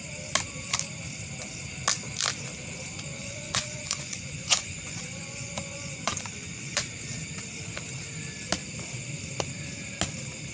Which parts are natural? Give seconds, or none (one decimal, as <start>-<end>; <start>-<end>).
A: 0.0-3.2; 6.9-10.5